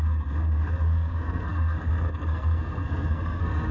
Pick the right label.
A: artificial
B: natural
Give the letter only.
A